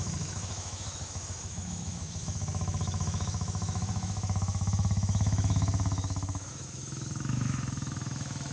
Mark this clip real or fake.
fake